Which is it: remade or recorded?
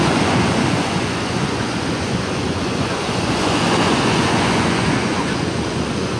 remade